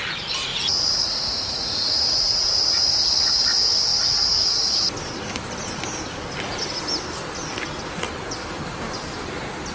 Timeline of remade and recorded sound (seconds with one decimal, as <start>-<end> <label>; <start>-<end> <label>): 0.0-0.5 recorded; 0.5-2.7 remade; 2.7-3.9 recorded; 3.9-4.8 remade; 4.8-9.7 recorded

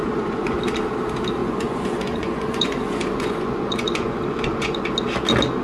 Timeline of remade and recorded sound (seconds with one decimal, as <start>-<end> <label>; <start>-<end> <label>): 0.0-0.6 remade; 0.6-1.4 recorded; 1.4-4.8 remade; 4.8-5.6 recorded

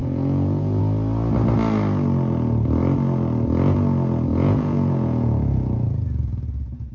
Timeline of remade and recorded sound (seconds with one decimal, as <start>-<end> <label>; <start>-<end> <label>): 0.0-0.8 remade; 0.8-4.3 recorded; 4.3-6.9 remade

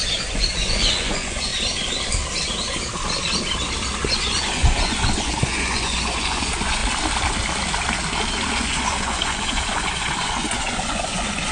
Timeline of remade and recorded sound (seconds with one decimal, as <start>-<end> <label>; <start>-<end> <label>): 0.0-1.5 remade; 1.5-4.0 recorded; 4.0-6.8 remade; 6.8-8.5 recorded; 8.5-11.5 remade

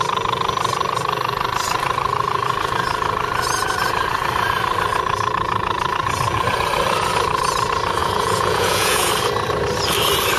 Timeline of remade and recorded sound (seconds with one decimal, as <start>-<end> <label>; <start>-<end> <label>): 0.0-8.0 recorded; 8.0-9.1 remade; 9.1-10.4 recorded